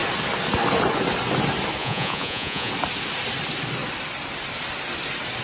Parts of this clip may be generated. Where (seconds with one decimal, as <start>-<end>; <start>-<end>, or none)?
1.8-2.7